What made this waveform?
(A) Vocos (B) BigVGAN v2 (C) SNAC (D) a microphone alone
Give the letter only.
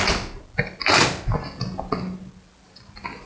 D